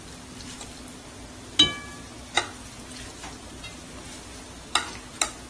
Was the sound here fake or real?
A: real